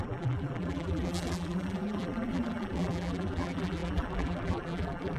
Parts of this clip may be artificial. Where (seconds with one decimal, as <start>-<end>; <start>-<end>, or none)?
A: 0.0-5.2